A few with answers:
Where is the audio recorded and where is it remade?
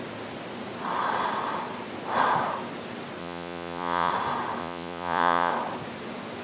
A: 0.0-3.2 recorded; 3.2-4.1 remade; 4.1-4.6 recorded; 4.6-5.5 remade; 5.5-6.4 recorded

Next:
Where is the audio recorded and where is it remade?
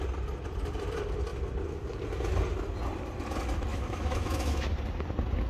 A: 0.0-3.7 recorded; 3.7-4.7 remade; 4.7-5.5 recorded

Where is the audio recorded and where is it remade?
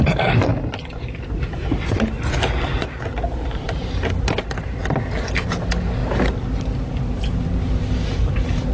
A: 0.0-8.7 recorded